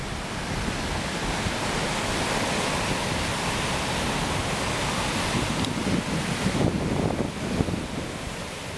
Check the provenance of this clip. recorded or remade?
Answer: recorded